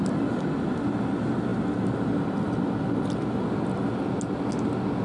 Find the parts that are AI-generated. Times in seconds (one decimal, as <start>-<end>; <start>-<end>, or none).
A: none